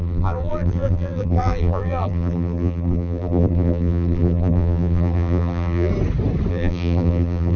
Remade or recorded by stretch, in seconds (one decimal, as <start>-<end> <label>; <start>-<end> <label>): 0.0-5.9 remade; 5.9-6.5 recorded; 6.5-7.6 remade